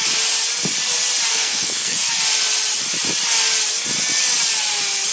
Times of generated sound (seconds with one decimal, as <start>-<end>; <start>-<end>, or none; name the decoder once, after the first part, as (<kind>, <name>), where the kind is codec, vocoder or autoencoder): 1.3-2.1 (codec, SNAC)